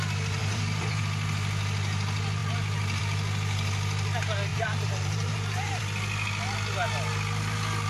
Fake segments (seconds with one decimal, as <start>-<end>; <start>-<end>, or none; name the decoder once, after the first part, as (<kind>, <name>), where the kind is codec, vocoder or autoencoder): 0.4-1.0 (vocoder, BigVGAN v2); 4.5-5.8